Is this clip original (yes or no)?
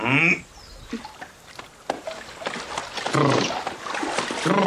yes